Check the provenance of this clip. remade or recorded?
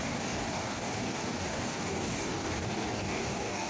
remade